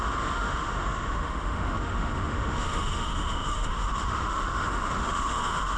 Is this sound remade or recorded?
remade